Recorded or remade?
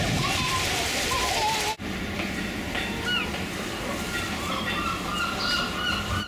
recorded